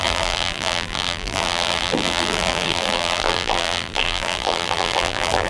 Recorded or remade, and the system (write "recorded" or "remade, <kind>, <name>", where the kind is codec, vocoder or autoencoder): remade, vocoder, BigVGAN v2